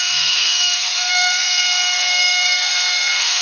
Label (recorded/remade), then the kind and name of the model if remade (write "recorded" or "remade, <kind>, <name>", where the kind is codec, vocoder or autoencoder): remade, codec, SNAC